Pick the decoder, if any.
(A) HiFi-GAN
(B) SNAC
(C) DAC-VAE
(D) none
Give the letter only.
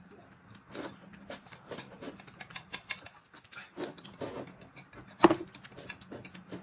D